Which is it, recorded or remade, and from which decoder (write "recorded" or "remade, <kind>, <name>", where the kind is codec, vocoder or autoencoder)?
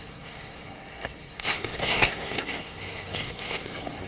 remade, codec, SNAC